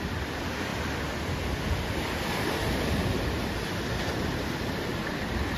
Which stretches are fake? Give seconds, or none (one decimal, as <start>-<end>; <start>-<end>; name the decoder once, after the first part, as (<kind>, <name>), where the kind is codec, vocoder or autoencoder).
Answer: none